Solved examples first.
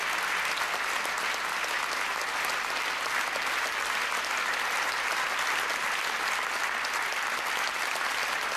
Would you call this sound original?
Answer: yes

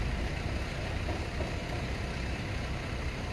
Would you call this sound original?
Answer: no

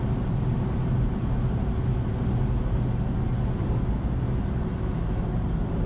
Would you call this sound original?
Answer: yes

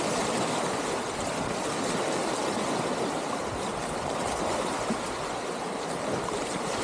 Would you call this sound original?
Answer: no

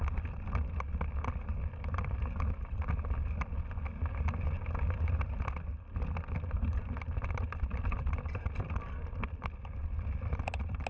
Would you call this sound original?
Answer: yes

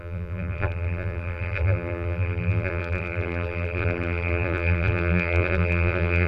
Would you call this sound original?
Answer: no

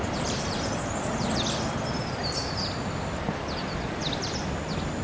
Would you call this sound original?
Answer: no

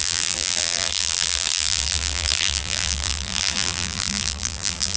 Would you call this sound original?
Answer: no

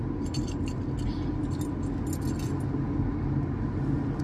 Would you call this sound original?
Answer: yes